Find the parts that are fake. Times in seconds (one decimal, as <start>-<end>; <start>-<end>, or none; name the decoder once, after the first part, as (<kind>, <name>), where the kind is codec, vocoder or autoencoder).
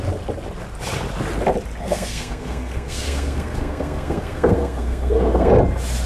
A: 1.8-5.5 (codec, SNAC)